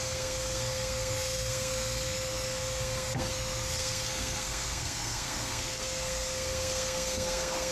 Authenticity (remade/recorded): remade